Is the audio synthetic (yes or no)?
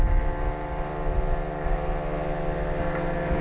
no